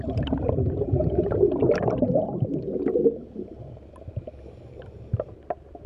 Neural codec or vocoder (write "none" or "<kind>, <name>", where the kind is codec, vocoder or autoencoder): vocoder, BigVGAN v2